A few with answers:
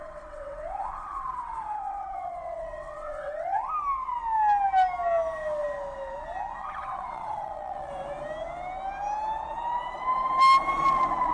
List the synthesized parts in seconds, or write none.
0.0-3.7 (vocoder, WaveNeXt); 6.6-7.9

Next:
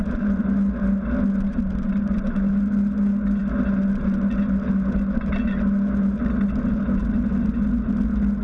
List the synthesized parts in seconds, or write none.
none